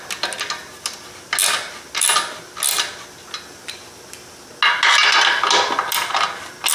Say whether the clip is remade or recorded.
recorded